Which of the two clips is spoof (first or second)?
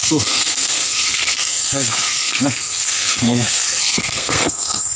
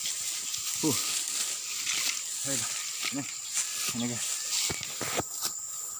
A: first